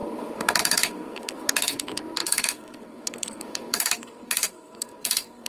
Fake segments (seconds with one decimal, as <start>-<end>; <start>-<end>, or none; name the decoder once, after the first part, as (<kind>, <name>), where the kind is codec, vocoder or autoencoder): 0.0-5.5 (codec, SNAC)